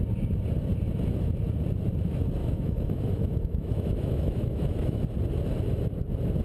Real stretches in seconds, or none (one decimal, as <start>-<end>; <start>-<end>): 0.0-2.4; 5.0-6.4